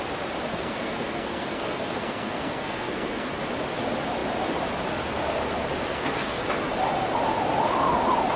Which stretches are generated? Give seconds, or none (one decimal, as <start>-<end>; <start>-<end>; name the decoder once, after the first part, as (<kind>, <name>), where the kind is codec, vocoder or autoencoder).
0.5-3.3 (codec, SNAC); 5.9-6.4